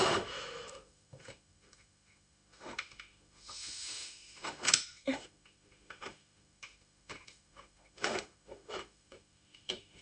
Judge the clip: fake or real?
fake